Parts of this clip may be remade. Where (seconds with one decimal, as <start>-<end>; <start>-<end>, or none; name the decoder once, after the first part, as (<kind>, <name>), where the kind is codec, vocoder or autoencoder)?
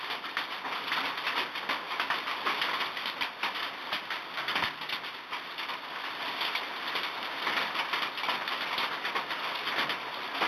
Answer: none